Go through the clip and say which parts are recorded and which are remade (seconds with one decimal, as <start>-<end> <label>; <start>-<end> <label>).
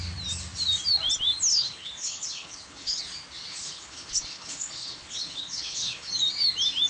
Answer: 0.0-1.5 recorded; 1.5-3.0 remade; 3.0-3.5 recorded; 3.5-6.1 remade; 6.1-6.9 recorded